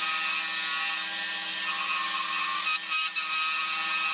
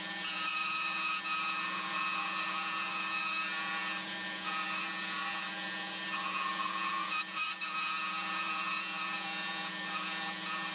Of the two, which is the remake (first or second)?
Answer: second